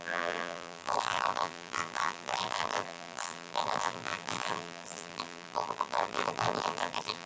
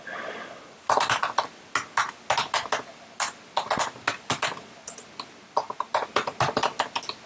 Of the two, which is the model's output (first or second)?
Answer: first